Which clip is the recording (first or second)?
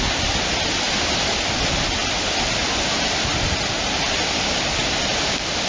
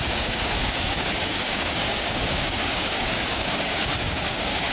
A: first